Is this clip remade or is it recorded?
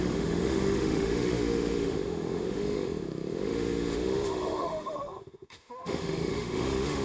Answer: remade